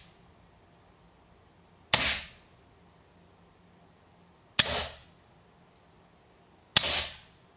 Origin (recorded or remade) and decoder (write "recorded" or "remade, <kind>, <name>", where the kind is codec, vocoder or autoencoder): recorded